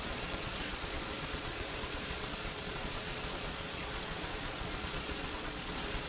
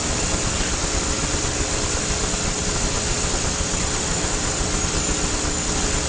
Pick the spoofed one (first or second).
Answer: first